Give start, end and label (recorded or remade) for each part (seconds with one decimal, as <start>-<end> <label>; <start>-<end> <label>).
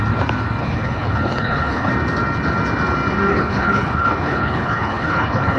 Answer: 0.0-0.6 recorded; 0.6-1.9 remade; 1.9-3.3 recorded; 3.3-5.6 remade